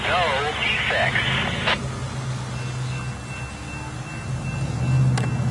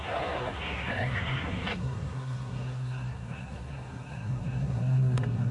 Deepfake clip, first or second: second